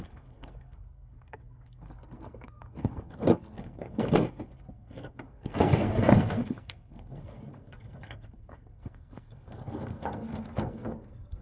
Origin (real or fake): fake